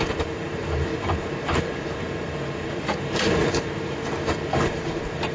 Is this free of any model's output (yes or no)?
no